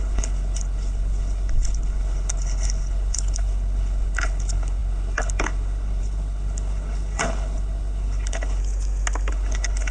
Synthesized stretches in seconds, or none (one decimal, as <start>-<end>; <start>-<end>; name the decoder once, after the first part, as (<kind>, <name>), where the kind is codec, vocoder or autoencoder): 0.0-8.6 (codec, HILCodec); 9.3-9.9